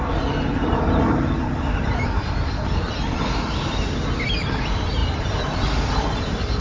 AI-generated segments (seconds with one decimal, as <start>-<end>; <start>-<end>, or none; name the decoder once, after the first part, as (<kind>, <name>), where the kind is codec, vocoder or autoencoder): none